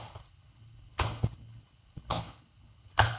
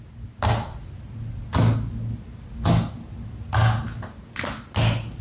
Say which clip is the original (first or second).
second